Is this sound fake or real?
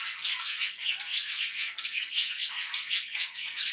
fake